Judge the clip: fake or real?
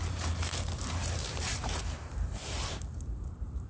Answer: fake